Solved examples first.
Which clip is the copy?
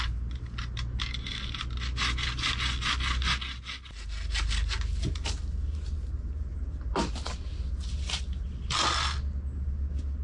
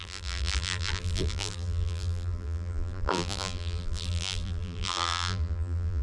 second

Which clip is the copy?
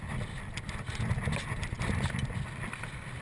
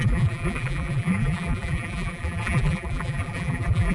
second